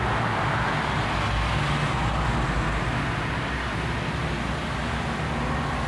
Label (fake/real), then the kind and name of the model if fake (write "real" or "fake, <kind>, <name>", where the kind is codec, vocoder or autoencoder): real